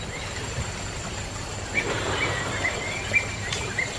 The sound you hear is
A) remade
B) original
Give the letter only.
B